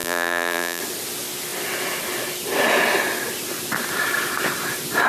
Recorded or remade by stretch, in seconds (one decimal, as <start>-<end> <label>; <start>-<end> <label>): 0.0-0.8 remade; 0.8-5.1 recorded